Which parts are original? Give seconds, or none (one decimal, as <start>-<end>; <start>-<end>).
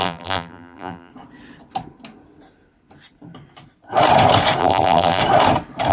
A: 1.1-4.6; 5.2-5.9